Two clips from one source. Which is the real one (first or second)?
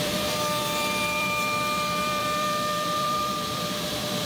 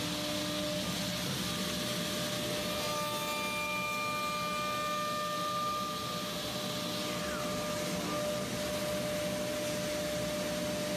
second